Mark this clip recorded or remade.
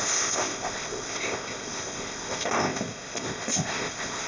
remade